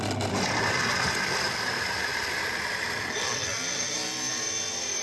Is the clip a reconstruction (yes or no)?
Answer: no